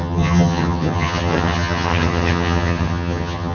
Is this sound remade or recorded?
remade